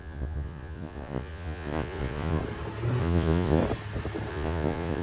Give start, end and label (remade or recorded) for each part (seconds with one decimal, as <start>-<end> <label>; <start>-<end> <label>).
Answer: 0.0-2.4 remade; 2.4-3.0 recorded; 3.0-3.6 remade; 3.6-4.3 recorded; 4.3-5.0 remade